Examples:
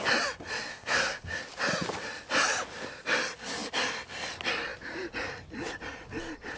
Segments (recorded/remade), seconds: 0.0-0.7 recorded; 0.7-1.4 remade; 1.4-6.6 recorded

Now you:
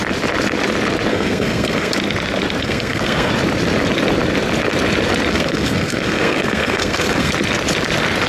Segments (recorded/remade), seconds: 0.0-1.1 recorded; 1.1-1.9 remade; 1.9-2.6 recorded; 2.6-3.3 remade; 3.3-5.3 recorded; 5.3-7.3 remade; 7.3-8.3 recorded

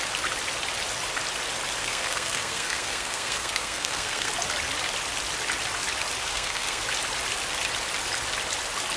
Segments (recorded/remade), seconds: 0.0-1.8 recorded; 1.8-4.3 remade; 4.3-6.2 recorded; 6.2-6.8 remade; 6.8-9.0 recorded

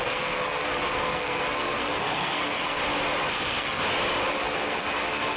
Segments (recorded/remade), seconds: 0.0-2.8 remade; 2.8-3.3 recorded; 3.3-3.8 remade; 3.8-4.3 recorded; 4.3-5.4 remade

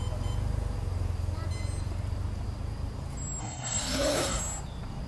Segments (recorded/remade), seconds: 0.0-3.4 recorded; 3.4-4.4 remade; 4.4-5.1 recorded